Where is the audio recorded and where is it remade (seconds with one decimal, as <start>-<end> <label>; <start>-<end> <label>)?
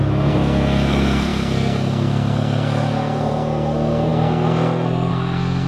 0.0-5.7 remade